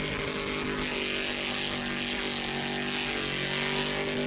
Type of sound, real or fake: real